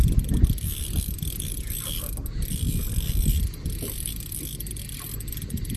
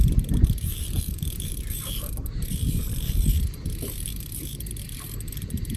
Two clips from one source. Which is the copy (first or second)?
second